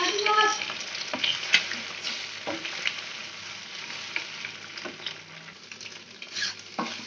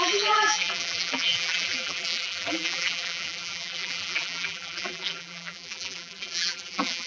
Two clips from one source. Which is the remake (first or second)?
second